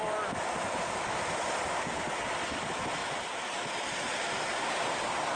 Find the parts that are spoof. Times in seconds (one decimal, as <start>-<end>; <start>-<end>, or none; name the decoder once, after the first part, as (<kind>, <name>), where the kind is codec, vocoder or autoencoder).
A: none